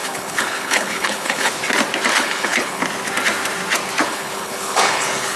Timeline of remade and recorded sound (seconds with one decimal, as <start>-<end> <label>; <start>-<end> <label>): 0.0-1.5 remade; 1.5-2.1 recorded; 2.1-2.8 remade; 2.8-4.0 recorded; 4.0-5.4 remade